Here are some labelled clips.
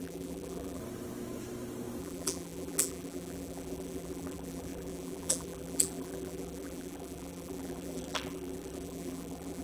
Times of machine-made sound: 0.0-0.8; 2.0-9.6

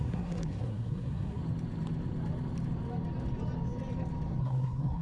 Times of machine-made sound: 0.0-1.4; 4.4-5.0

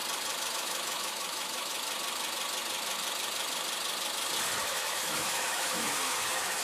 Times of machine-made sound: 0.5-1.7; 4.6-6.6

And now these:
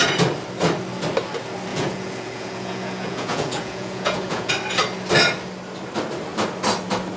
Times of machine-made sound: 1.7-4.5